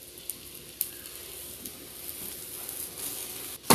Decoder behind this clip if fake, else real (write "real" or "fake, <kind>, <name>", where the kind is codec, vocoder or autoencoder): real